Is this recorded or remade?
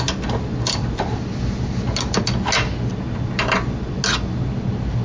recorded